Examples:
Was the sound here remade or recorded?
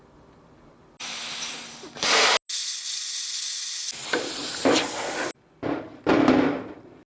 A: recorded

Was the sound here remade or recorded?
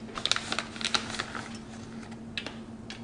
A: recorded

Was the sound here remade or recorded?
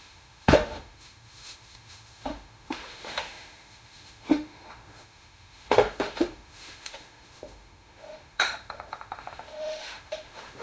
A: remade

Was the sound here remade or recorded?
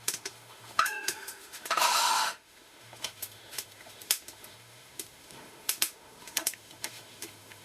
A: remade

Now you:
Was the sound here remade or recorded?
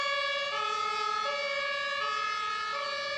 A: recorded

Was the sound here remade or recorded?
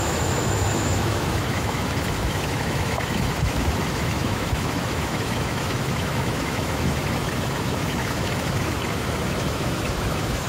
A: remade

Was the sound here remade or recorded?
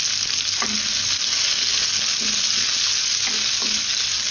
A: recorded